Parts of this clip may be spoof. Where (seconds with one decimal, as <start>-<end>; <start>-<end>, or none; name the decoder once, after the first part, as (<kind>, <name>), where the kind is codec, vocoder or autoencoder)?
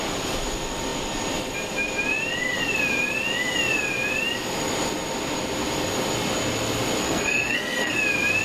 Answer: 7.0-8.0 (codec, SNAC)